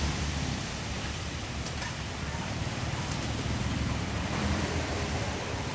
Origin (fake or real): fake